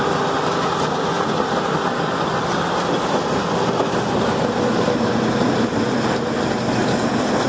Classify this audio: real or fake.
real